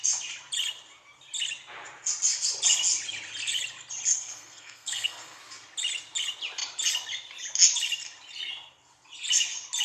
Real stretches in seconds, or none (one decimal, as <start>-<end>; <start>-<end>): 0.0-4.1; 5.4-9.8